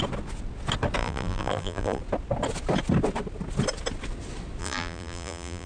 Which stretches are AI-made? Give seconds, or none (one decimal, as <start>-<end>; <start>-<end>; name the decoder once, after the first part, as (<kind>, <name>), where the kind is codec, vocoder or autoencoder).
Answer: 1.0-2.0 (vocoder, BigVGAN v2); 4.6-5.7

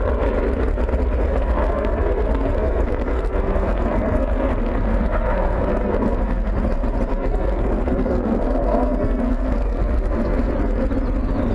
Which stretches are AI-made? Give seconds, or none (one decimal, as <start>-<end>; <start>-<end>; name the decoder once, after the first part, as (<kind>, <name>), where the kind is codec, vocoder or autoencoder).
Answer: 1.3-6.5 (codec, SNAC); 7.1-10.5

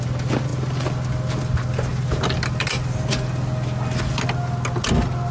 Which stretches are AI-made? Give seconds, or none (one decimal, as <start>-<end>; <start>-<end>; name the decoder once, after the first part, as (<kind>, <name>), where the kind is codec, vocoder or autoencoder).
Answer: none

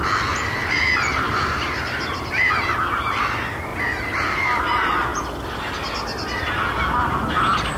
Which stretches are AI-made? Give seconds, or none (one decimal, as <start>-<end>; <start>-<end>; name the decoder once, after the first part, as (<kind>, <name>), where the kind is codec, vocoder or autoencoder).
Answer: 0.5-2.8 (vocoder, BigVGAN v2); 3.7-4.6

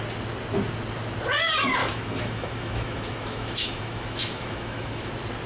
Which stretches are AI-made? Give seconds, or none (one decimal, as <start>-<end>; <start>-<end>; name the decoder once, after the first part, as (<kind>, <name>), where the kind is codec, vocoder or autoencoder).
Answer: 1.8-5.1 (autoencoder, DAC-VAE)

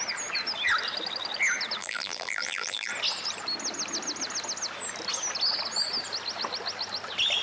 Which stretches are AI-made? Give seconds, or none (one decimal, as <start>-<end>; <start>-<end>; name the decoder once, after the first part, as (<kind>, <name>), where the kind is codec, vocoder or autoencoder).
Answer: 1.8-2.9 (vocoder, BigVGAN v2)

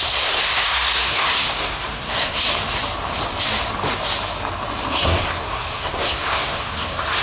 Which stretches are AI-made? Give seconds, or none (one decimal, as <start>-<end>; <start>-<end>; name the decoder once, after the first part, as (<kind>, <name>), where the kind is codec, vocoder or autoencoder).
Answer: 0.0-2.4 (codec, SNAC); 4.9-7.2

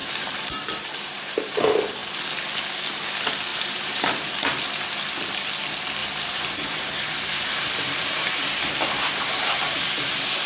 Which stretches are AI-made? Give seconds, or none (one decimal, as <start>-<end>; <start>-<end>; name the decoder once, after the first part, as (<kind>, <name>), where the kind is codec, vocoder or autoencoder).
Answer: 0.0-1.6 (vocoder, BigVGAN v2); 3.5-4.3; 6.0-8.7